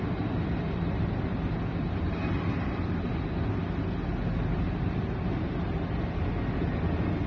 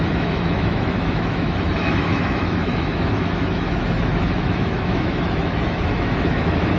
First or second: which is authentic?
first